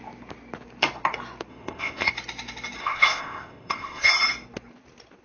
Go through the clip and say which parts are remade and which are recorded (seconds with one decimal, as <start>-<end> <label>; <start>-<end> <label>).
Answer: 0.0-1.5 recorded; 1.5-2.1 remade; 2.1-2.8 recorded; 2.8-4.1 remade; 4.1-5.2 recorded